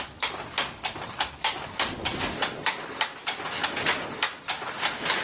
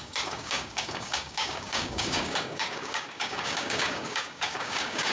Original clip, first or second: first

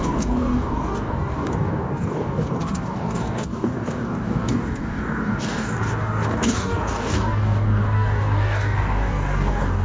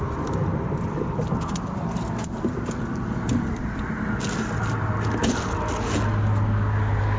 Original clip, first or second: second